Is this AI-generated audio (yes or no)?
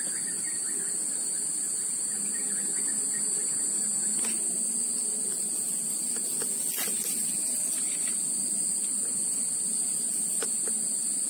no